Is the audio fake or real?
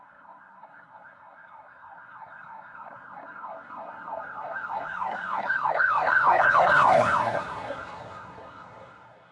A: fake